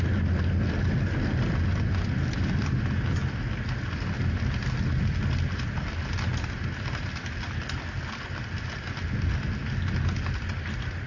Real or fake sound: real